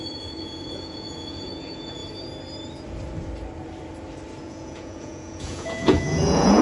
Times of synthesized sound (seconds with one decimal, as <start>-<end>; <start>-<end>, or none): 0.0-2.0; 4.4-6.6